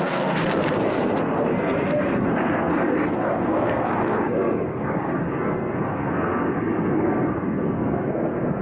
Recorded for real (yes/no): no